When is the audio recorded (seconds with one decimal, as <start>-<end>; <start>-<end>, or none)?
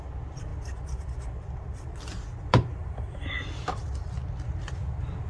0.0-0.5; 1.3-2.8; 4.0-5.3